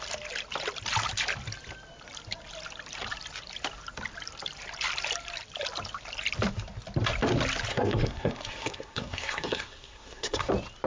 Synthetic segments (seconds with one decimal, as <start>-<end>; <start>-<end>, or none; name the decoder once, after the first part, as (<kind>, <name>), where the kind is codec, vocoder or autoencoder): 7.7-10.5 (codec, SNAC)